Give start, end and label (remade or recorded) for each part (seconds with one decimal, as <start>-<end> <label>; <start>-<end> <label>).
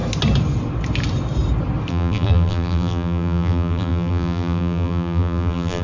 0.0-1.9 recorded; 1.9-5.8 remade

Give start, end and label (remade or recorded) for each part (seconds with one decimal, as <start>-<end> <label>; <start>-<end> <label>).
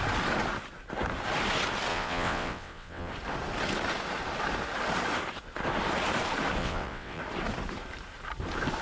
0.0-1.9 recorded; 1.9-3.1 remade; 3.1-6.6 recorded; 6.6-7.2 remade; 7.2-8.8 recorded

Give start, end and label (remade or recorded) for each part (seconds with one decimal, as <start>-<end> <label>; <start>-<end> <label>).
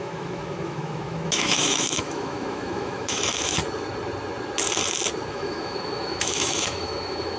0.0-3.6 remade; 3.6-5.3 recorded; 5.3-7.4 remade